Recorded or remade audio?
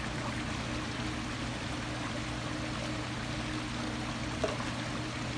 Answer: recorded